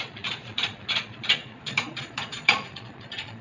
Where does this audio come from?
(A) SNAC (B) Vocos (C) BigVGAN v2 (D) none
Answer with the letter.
B